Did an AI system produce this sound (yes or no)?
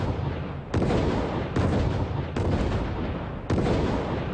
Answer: no